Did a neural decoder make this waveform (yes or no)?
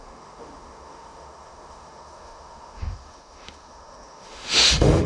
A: yes